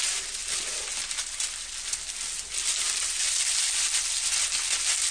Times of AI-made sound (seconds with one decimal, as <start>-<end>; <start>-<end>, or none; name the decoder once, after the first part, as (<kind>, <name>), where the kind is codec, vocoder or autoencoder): none